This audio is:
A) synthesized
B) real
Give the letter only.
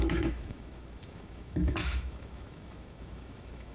A